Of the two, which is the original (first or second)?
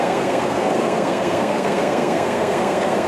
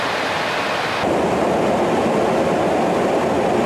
second